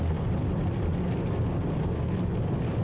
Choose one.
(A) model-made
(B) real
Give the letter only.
B